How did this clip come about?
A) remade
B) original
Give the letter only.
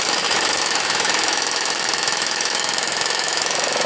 A